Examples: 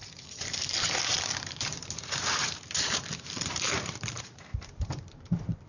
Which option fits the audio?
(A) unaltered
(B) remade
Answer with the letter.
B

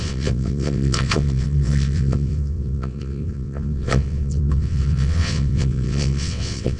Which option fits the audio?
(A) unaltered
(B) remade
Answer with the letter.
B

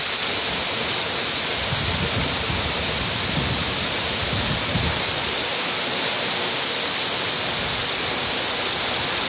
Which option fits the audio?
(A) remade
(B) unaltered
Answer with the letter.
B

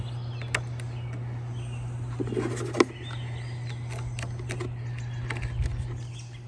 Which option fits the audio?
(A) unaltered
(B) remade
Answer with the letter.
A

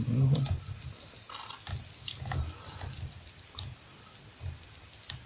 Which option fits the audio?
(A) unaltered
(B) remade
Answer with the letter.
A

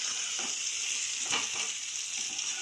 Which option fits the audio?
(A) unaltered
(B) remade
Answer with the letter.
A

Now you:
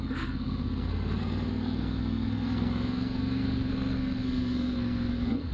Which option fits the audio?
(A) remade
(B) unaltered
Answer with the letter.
A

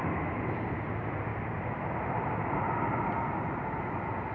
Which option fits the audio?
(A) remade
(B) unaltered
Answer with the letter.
B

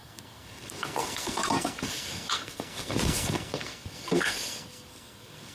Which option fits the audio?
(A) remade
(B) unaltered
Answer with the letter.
A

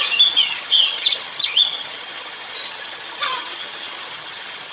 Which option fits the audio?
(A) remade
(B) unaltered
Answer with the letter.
A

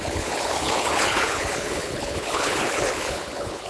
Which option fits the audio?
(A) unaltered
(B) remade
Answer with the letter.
B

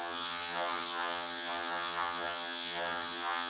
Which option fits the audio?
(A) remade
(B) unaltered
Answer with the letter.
A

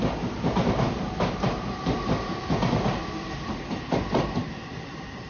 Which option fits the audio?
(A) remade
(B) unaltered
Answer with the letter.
B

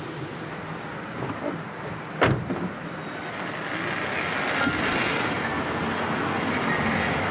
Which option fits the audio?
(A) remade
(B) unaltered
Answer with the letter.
B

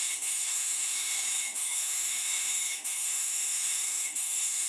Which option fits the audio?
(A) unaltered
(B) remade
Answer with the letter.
B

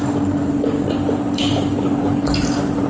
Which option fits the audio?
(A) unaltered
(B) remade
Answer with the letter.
A